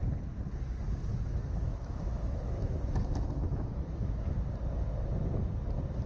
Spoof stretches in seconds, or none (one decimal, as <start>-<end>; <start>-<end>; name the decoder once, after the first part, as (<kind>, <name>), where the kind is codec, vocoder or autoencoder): 1.1-4.3 (autoencoder, DAC-VAE)